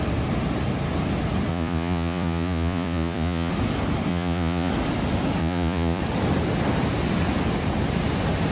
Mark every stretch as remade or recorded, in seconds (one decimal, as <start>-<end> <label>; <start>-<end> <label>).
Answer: 0.0-1.5 recorded; 1.5-3.5 remade; 3.5-4.1 recorded; 4.1-4.7 remade; 4.7-5.4 recorded; 5.4-6.0 remade; 6.0-8.5 recorded